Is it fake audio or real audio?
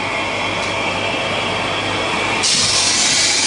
real